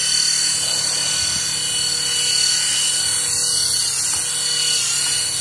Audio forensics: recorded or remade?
recorded